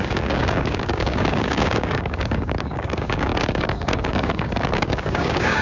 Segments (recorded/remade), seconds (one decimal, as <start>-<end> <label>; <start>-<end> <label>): 0.0-5.6 remade